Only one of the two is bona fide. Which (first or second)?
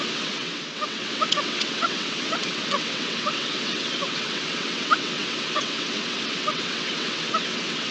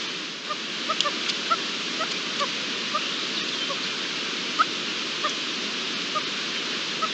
second